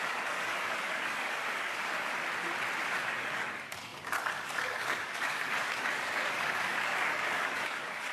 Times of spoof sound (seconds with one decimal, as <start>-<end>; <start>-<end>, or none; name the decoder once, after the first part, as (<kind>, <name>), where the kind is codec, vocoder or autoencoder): 0.0-2.1 (codec, DAC); 2.8-8.1